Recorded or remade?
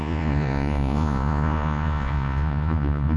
remade